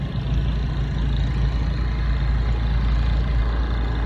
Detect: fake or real real